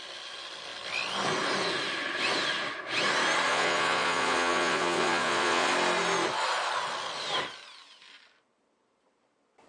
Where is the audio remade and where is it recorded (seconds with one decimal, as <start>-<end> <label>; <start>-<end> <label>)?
0.0-3.5 recorded; 3.5-5.7 remade; 5.7-9.7 recorded